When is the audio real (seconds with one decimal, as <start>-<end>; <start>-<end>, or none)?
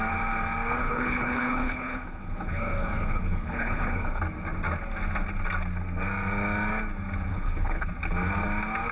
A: 0.0-0.8; 4.2-7.3; 7.9-8.9